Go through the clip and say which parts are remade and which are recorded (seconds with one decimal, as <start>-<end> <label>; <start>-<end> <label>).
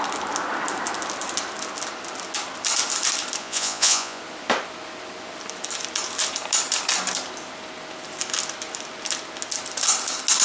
0.0-3.4 recorded; 3.4-4.2 remade; 4.2-10.4 recorded